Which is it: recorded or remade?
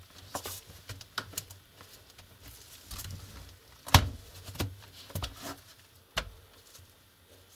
recorded